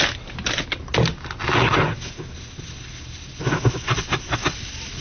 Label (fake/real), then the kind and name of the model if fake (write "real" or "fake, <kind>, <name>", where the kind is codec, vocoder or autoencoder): real